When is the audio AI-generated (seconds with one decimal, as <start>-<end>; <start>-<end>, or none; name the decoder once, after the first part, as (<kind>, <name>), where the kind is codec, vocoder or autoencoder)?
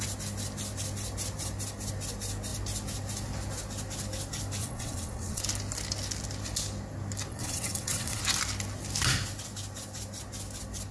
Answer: 4.6-5.4 (vocoder, WaveNeXt); 7.3-8.2